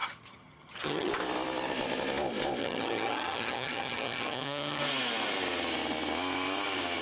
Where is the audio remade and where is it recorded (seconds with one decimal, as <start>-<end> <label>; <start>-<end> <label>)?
0.0-1.1 remade; 1.1-2.6 recorded; 2.6-4.8 remade; 4.8-7.0 recorded